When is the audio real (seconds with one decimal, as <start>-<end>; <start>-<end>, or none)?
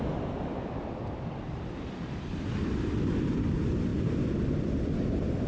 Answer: 3.9-4.5